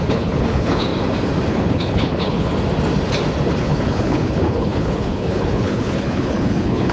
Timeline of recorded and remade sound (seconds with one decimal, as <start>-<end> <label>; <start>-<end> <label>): 0.0-0.9 remade; 0.9-1.5 recorded; 1.5-2.5 remade; 2.5-3.6 recorded; 3.6-6.9 remade